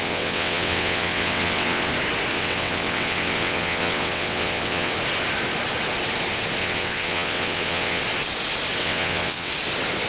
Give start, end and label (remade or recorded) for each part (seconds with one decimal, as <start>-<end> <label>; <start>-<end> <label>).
0.0-1.9 remade; 1.9-2.3 recorded; 2.3-4.9 remade; 4.9-6.6 recorded; 6.6-8.0 remade; 8.0-8.8 recorded; 8.8-9.5 remade; 9.5-10.1 recorded